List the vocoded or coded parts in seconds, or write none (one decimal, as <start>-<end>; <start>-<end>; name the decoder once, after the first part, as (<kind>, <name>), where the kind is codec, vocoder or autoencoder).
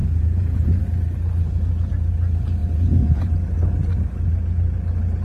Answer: 0.0-0.8 (vocoder, Vocos); 2.6-3.2